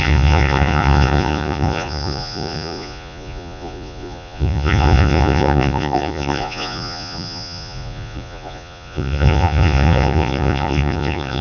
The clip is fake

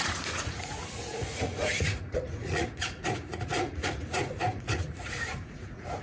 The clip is fake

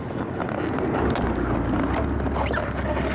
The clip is real